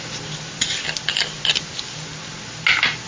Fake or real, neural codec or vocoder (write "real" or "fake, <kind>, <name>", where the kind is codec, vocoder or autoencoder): real